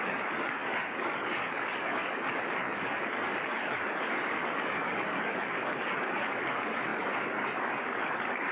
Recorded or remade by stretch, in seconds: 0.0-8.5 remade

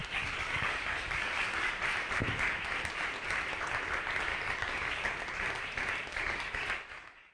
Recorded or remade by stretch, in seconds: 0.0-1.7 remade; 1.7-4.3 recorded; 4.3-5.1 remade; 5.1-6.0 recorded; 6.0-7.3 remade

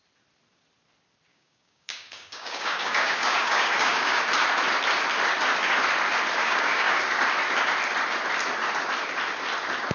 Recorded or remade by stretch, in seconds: 0.0-1.3 recorded; 1.3-4.2 remade; 4.2-6.4 recorded; 6.4-7.0 remade; 7.0-9.9 recorded